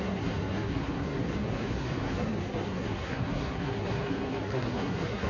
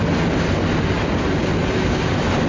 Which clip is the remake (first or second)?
first